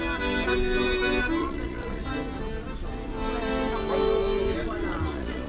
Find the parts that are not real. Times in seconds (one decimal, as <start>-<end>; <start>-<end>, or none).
1.4-2.0; 4.6-5.5